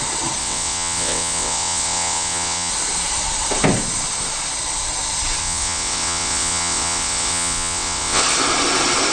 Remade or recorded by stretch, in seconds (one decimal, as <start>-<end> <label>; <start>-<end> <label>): 0.0-0.4 recorded; 0.4-2.7 remade; 2.7-5.4 recorded; 5.4-8.2 remade; 8.2-9.1 recorded